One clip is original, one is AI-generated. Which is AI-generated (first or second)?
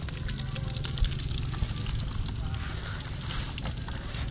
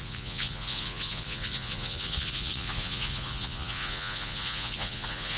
second